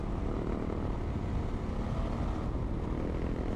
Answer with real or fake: real